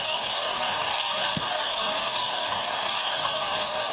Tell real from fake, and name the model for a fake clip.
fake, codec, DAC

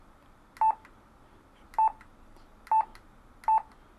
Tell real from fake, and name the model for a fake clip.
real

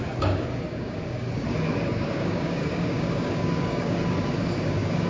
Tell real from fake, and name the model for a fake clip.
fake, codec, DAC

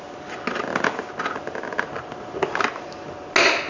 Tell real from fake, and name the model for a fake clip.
real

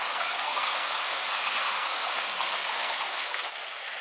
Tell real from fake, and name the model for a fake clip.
fake, codec, SNAC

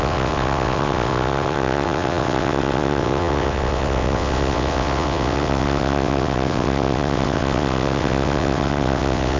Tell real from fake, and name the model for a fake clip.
fake, vocoder, WaveNeXt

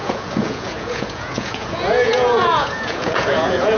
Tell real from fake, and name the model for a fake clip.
fake, vocoder, Vocos